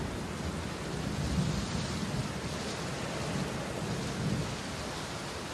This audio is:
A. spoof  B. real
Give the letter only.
B